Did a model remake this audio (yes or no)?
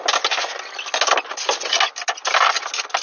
no